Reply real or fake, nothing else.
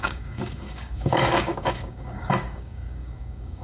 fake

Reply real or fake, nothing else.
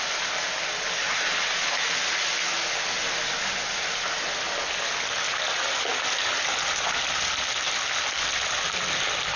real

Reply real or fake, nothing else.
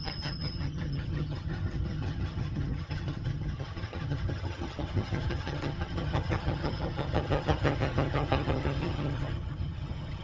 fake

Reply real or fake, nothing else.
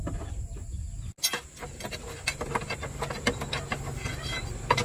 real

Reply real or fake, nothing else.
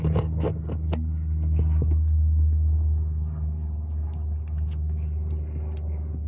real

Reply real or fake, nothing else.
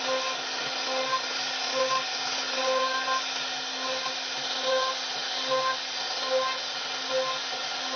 real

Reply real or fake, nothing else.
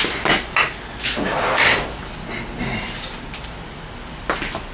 real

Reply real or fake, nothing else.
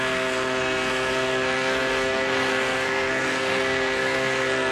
fake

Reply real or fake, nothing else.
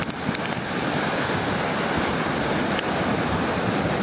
real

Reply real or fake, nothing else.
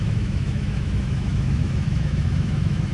fake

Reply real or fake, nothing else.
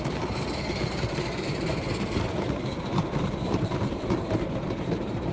fake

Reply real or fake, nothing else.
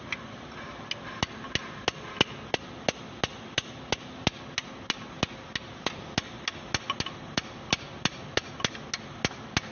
real